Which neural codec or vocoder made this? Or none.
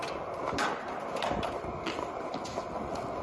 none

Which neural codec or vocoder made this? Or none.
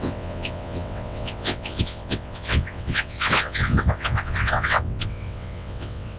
vocoder, WaveNeXt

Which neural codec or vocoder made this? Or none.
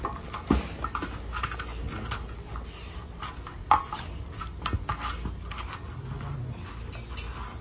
none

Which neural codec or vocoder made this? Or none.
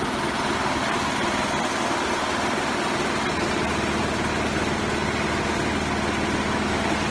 none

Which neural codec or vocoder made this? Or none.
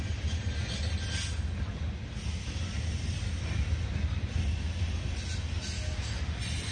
none